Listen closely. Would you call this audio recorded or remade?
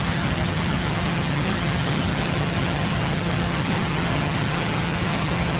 remade